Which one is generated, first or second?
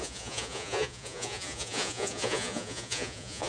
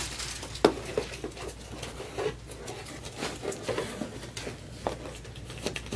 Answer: first